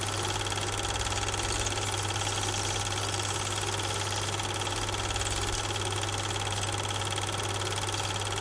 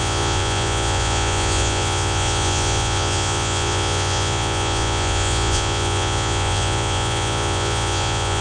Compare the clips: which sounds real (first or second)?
first